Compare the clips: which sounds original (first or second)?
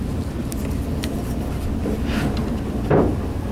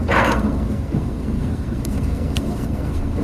first